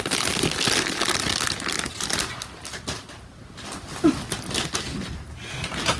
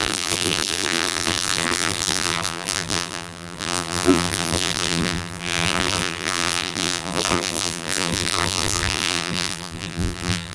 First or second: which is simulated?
second